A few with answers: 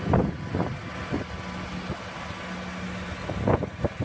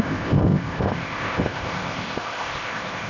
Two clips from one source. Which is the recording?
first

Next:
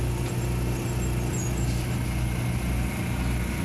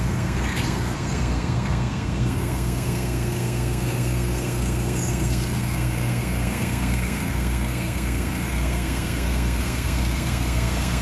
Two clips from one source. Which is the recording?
first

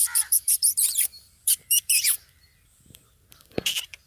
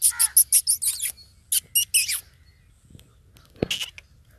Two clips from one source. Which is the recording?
second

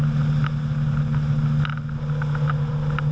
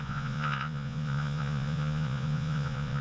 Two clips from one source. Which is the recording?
first